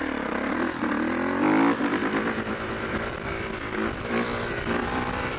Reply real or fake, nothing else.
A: fake